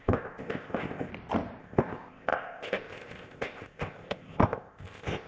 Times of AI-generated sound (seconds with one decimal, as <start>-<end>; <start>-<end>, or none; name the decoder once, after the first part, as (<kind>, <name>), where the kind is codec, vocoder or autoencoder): 0.0-1.1 (codec, ZipCodec); 1.6-5.3